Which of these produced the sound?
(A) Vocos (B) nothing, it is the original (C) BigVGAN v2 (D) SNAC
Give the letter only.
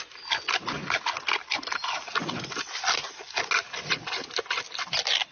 B